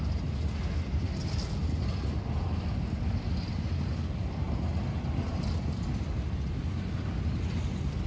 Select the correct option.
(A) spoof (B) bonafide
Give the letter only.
B